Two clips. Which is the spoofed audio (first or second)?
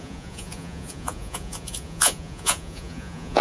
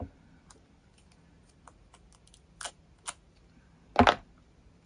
first